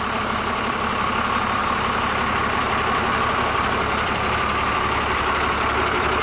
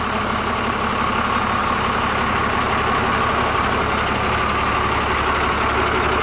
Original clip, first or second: second